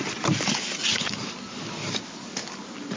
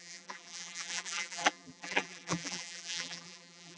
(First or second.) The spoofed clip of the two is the second